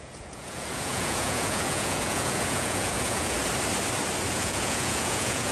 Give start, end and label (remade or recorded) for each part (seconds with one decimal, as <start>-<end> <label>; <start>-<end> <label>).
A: 0.0-3.4 remade; 3.4-4.3 recorded; 4.3-5.5 remade